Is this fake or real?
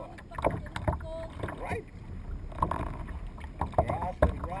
real